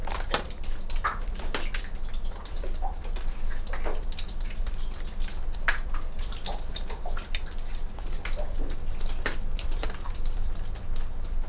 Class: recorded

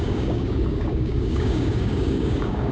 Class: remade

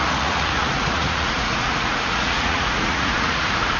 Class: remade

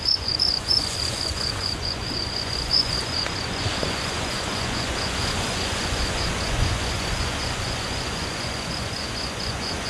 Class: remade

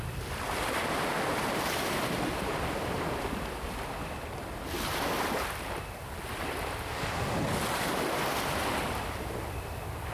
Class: recorded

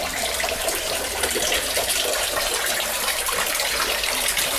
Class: remade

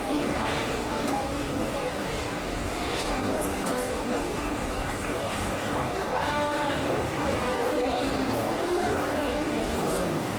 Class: remade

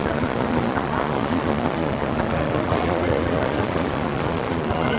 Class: remade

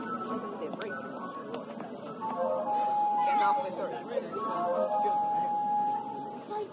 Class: recorded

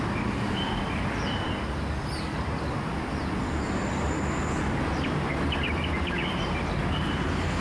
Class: recorded